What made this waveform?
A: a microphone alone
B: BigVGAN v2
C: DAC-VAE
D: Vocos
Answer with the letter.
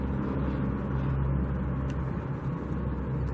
A